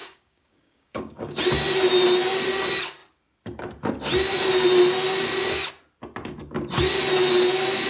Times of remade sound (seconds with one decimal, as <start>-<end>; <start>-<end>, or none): 0.0-1.4